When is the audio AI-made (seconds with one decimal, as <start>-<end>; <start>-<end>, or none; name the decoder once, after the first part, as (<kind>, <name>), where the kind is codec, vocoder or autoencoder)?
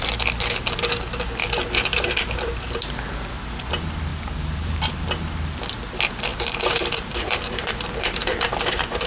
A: 1.9-3.0 (vocoder, BigVGAN v2); 4.1-4.9; 6.3-9.1